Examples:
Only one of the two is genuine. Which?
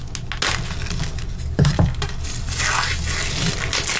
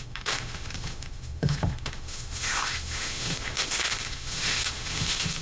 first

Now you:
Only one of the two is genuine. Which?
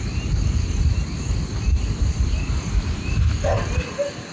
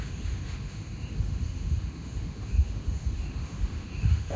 first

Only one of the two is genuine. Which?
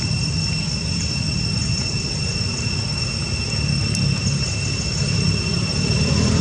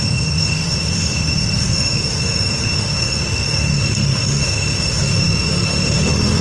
first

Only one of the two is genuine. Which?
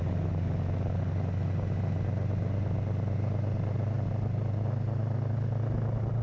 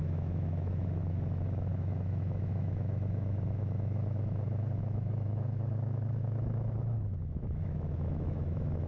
first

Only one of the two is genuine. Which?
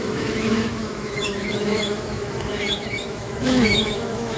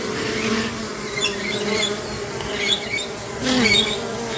second